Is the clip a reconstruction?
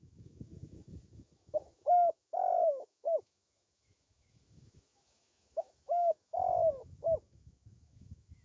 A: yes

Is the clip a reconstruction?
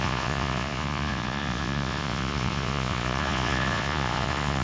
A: yes